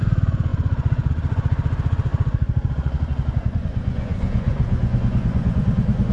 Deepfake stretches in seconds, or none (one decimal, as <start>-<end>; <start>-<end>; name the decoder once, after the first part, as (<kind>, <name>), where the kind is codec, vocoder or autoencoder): 0.0-6.1 (vocoder, Vocos)